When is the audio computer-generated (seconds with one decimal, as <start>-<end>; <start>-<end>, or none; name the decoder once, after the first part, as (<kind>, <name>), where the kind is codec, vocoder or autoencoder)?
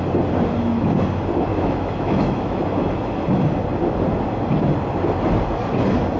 1.5-2.6 (autoencoder, DAC-VAE)